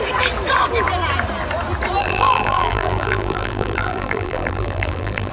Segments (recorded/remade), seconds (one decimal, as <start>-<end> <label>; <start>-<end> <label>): 0.0-2.0 recorded; 2.0-5.3 remade